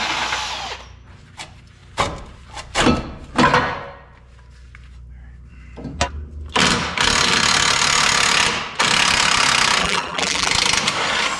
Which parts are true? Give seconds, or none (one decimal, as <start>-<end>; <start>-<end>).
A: 0.0-9.8; 10.5-11.4

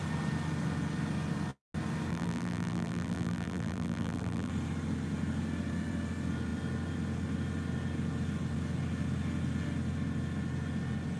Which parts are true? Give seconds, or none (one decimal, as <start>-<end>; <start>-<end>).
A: 0.0-2.1; 4.5-11.2